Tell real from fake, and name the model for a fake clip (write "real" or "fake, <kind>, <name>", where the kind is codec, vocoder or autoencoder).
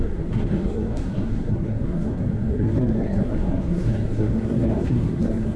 fake, codec, SNAC